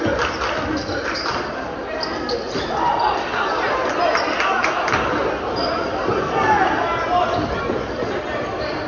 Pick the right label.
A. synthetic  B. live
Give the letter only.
B